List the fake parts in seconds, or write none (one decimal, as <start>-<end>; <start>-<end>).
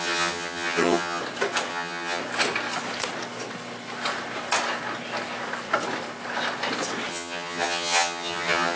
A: 0.0-1.2; 1.7-2.2; 7.1-8.8